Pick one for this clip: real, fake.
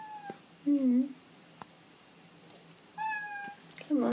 real